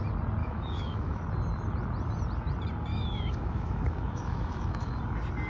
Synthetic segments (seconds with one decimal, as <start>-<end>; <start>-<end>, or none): 0.4-1.2; 2.9-5.0